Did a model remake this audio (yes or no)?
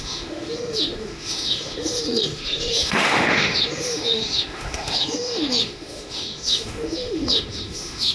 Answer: yes